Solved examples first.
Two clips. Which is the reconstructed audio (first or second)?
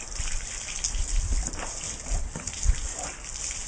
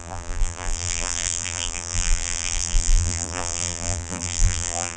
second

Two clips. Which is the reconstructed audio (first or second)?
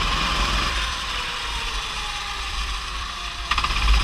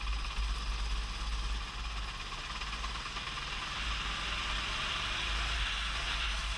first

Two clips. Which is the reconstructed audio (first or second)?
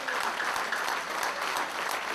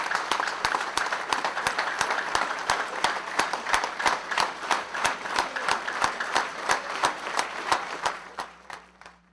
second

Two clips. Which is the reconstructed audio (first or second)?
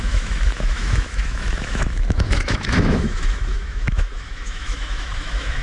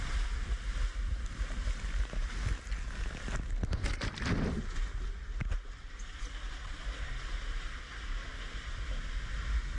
first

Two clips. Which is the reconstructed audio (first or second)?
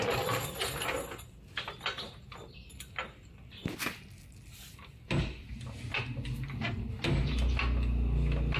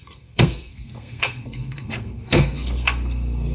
second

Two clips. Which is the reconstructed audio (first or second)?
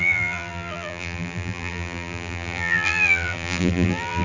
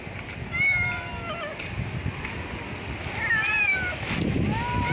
first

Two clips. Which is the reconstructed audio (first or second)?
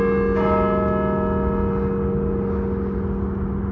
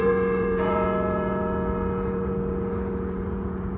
second